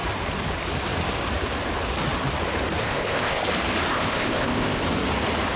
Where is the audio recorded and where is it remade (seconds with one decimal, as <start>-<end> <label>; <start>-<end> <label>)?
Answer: 0.0-2.8 recorded; 2.8-3.4 remade; 3.4-3.9 recorded; 3.9-4.8 remade; 4.8-5.6 recorded